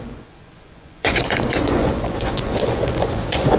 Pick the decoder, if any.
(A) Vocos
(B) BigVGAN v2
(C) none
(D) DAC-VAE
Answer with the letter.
A